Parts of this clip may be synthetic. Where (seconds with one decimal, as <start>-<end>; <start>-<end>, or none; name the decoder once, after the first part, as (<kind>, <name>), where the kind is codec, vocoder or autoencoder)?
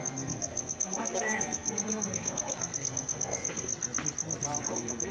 0.0-3.7 (codec, SNAC); 4.6-5.1